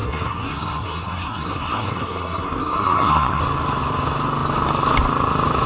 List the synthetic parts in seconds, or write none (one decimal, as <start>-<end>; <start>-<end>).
0.0-3.4